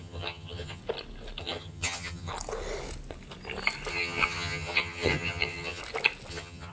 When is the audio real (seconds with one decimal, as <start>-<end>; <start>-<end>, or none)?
0.8-1.4; 2.3-3.9; 5.8-6.3